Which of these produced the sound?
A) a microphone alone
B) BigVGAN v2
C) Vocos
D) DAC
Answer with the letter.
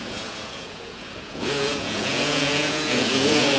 C